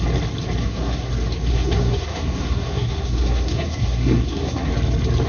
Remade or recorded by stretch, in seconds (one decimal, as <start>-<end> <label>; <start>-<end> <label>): 0.0-0.6 recorded; 0.6-1.1 remade; 1.1-1.5 recorded; 1.5-4.7 remade; 4.7-5.3 recorded